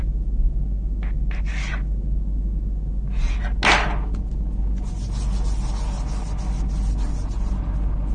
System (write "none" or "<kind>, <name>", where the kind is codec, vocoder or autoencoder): none